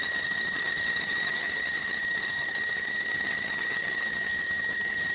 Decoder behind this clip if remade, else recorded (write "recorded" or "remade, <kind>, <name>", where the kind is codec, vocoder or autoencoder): remade, vocoder, HiFi-GAN